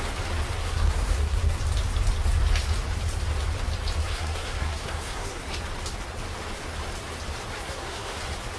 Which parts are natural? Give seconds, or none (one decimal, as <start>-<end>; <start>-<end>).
0.0-0.6; 1.6-4.0; 5.6-7.5; 8.2-8.6